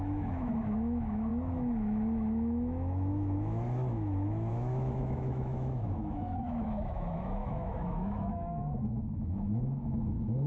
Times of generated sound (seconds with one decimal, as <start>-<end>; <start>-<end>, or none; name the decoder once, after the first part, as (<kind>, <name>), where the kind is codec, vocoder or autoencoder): 0.0-10.5 (autoencoder, DAC-VAE)